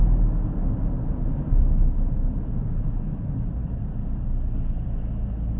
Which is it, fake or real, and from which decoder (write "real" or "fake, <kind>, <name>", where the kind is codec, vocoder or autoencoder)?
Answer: real